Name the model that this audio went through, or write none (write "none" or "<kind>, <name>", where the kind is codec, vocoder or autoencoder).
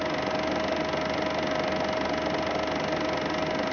none